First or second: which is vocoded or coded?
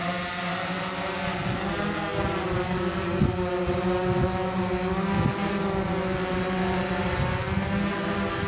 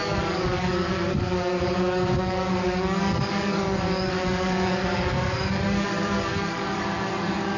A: second